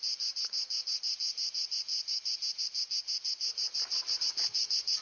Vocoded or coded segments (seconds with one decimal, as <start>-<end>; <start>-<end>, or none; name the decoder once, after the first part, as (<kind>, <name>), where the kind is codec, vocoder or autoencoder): none